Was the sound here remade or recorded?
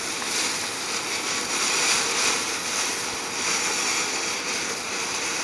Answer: recorded